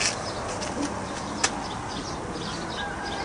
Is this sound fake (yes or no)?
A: no